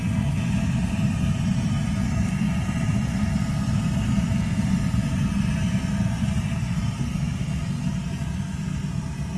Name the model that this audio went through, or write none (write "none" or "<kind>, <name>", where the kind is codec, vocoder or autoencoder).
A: none